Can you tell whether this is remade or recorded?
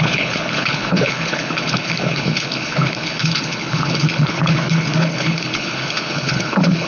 remade